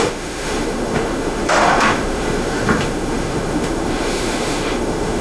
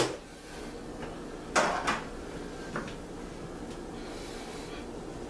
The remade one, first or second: first